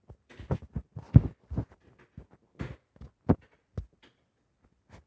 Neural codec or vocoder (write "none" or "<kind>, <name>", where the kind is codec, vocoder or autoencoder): none